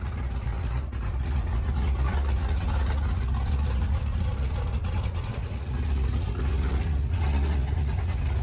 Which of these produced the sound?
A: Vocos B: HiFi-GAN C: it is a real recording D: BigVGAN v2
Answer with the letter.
A